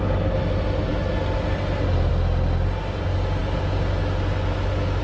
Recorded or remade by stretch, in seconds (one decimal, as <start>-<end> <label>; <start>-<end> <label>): 0.0-5.0 recorded